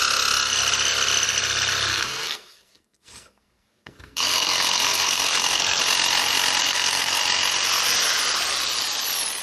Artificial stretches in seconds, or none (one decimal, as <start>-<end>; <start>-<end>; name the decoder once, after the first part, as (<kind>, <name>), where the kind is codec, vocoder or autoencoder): 1.9-5.8 (codec, SNAC); 6.6-7.2